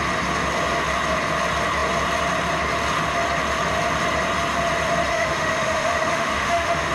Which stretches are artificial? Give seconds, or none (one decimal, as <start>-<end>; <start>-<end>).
5.1-6.9

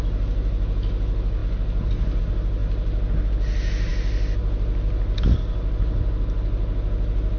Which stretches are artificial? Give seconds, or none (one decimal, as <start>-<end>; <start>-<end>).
none